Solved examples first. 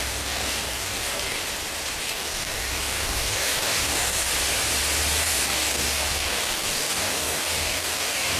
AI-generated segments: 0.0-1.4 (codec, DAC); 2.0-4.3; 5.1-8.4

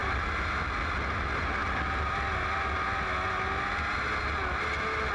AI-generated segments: 0.0-0.5 (vocoder, BigVGAN v2)

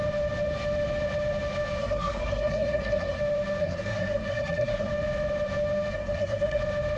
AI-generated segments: 1.8-3.2 (codec, SNAC); 3.6-4.9; 5.9-6.6

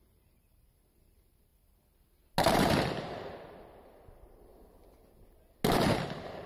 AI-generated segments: 0.0-1.5 (vocoder, BigVGAN v2); 2.5-4.5; 5.7-6.5

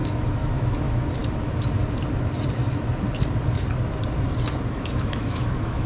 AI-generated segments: 0.0-1.2 (autoencoder, DAC-VAE); 4.7-5.9

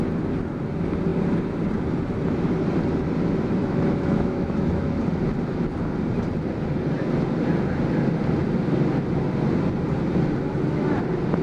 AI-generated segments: 3.6-5.0 (autoencoder, DAC-VAE)